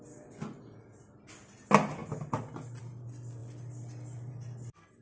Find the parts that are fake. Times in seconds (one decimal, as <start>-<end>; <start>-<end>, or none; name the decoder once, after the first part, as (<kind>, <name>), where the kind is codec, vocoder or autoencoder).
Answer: none